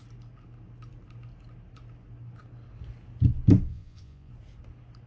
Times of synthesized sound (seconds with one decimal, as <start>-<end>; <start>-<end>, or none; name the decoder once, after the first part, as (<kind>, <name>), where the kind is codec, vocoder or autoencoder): 3.7-4.3 (vocoder, Vocos)

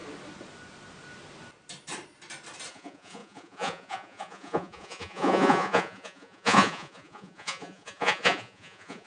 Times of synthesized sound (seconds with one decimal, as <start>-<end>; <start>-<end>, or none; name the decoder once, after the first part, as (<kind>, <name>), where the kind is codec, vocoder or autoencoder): 2.7-9.1 (vocoder, Vocos)

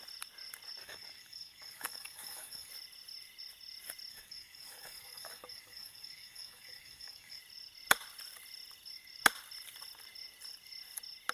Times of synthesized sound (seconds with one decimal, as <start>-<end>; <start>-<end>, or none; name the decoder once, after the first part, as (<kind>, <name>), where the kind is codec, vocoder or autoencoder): 0.8-2.7 (codec, DAC); 4.1-7.4

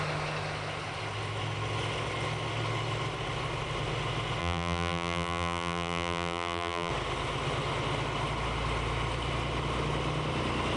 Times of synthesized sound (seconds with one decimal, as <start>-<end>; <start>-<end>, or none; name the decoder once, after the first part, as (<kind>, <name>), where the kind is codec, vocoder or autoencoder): 4.4-6.9 (vocoder, BigVGAN v2)

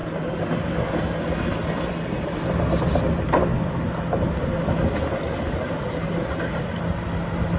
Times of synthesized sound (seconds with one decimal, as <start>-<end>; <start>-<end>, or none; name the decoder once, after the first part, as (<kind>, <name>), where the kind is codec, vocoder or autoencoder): none

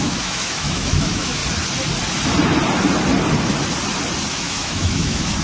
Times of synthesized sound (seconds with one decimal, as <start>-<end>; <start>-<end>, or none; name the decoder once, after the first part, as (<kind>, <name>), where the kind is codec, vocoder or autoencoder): 0.0-1.4 (autoencoder, DAC-VAE); 4.3-5.4